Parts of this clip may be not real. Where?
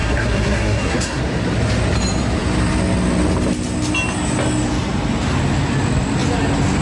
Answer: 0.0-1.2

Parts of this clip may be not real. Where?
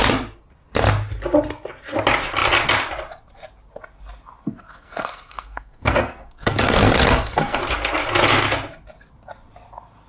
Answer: 4.4-7.6